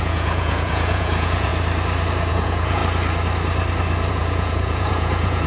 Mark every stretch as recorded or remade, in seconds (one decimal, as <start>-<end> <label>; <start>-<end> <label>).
0.0-1.5 remade; 1.5-2.3 recorded; 2.3-2.8 remade; 2.8-4.1 recorded; 4.1-5.5 remade